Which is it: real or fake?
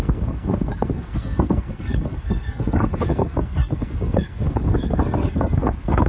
fake